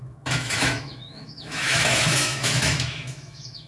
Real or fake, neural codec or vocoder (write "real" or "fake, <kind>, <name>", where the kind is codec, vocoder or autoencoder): fake, autoencoder, DAC-VAE